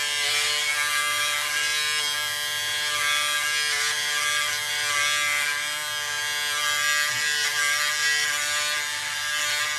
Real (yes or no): yes